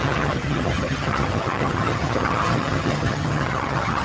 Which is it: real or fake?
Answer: fake